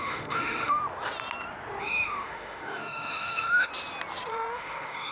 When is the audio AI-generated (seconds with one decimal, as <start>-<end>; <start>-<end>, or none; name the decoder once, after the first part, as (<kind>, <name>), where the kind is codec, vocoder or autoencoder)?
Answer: 0.0-0.8 (autoencoder, DAC-VAE); 1.8-3.7; 4.3-5.1